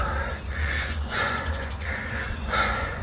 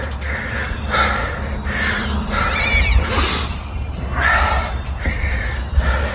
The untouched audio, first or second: second